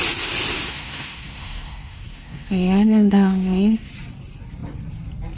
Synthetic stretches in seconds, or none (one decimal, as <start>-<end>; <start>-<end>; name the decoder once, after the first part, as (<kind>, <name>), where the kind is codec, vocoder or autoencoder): 0.7-3.9 (codec, SNAC)